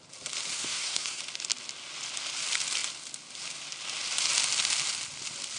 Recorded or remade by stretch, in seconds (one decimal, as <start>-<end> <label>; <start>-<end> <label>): 0.0-0.5 recorded; 0.5-1.2 remade; 1.2-5.6 recorded